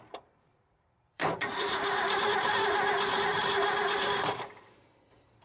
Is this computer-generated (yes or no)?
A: yes